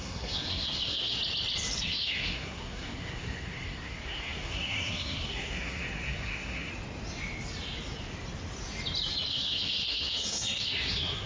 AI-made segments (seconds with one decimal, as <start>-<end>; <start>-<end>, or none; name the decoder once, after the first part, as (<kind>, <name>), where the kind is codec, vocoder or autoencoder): 0.0-1.2 (codec, SNAC); 1.8-6.7; 9.3-11.3